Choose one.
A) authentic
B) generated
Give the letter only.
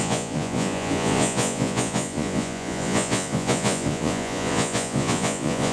B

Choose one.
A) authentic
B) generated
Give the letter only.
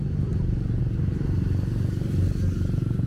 A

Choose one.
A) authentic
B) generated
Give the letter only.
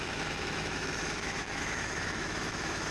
B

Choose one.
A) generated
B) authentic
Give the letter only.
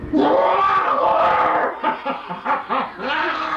B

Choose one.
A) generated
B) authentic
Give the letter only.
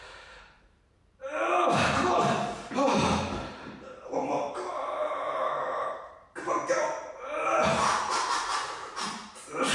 A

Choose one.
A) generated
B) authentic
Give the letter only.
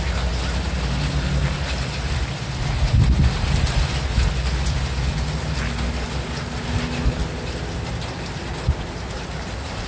B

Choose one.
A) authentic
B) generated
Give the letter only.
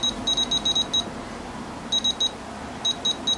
A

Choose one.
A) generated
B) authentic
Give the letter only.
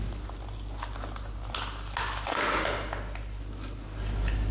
B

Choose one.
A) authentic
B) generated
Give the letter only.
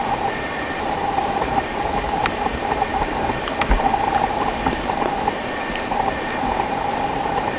B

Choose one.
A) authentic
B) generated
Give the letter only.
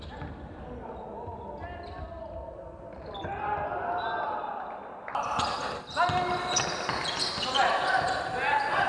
A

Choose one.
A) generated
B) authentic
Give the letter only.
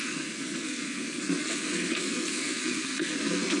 A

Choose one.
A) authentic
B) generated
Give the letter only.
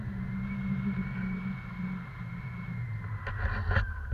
A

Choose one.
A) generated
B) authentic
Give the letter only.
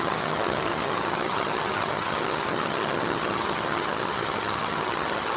A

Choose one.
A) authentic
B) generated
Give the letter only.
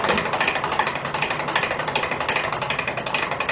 A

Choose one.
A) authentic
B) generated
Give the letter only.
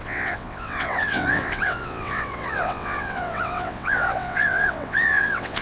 B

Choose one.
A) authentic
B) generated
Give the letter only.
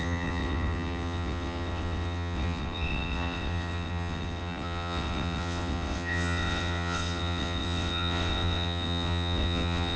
B